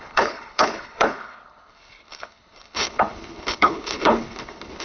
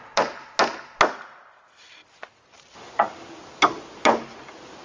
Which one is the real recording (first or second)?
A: second